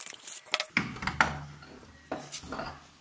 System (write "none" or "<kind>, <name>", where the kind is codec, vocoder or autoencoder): none